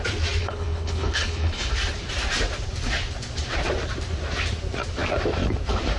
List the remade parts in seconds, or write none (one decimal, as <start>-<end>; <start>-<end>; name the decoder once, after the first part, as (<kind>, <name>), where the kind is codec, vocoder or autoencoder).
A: 0.4-1.7 (codec, HILCodec)